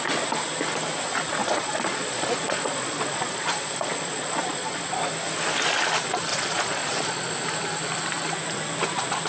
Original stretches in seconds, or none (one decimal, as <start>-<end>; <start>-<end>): 0.0-1.4; 5.0-6.3; 7.3-9.3